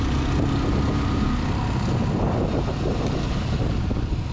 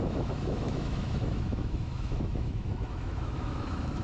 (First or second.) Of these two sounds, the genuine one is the first